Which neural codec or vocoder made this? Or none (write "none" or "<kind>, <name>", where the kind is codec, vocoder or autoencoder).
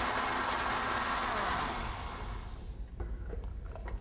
none